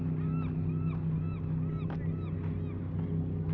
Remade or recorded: recorded